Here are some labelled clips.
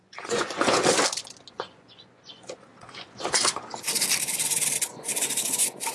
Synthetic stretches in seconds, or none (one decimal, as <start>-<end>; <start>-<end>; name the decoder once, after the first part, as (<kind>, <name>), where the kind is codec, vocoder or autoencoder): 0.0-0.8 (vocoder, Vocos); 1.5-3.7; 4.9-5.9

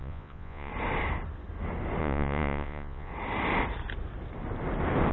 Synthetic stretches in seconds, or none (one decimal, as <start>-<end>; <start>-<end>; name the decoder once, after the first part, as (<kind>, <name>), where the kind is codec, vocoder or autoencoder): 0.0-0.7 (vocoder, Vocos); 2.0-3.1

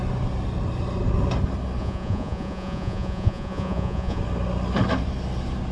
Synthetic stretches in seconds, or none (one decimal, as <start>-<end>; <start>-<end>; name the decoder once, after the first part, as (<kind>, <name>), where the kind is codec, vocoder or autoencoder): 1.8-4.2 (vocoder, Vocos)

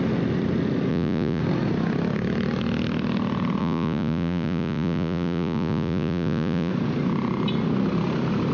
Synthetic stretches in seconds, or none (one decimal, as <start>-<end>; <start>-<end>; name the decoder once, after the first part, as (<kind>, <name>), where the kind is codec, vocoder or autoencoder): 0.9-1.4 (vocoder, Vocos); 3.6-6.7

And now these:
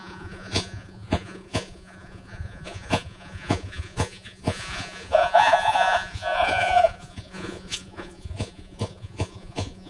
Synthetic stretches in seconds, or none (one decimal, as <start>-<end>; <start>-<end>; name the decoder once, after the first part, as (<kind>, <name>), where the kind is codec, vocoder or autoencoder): 0.0-9.9 (vocoder, Vocos)

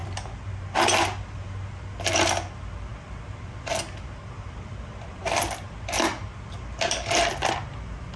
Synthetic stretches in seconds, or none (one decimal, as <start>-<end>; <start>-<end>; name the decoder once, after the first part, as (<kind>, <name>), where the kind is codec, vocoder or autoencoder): none